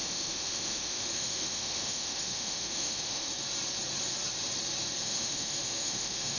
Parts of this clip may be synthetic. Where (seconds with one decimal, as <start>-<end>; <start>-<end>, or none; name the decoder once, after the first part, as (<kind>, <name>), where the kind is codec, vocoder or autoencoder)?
0.0-3.3 (autoencoder, DAC-VAE); 5.0-6.4